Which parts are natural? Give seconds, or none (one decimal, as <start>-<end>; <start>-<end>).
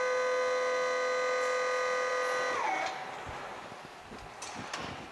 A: 0.0-5.1